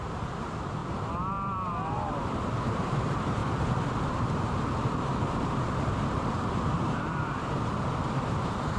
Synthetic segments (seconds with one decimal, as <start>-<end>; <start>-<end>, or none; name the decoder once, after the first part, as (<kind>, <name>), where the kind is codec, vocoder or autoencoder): 0.0-0.8 (vocoder, BigVGAN v2); 2.2-3.4; 4.1-8.8